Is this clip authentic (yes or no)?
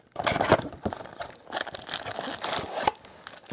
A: yes